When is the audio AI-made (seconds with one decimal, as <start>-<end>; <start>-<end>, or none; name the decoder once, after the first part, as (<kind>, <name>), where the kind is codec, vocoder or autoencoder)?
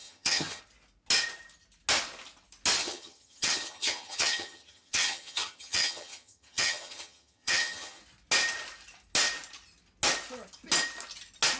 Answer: 0.0-0.6 (vocoder, HiFi-GAN); 2.8-8.0